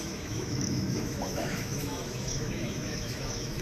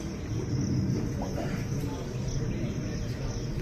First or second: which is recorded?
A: second